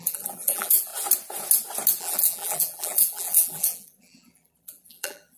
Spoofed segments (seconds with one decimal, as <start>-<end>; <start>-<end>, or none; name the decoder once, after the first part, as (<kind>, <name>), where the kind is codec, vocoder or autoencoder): 0.0-0.9 (vocoder, BigVGAN v2); 2.0-5.4